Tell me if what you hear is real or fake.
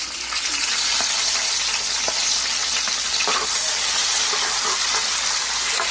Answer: real